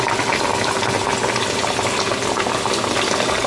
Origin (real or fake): real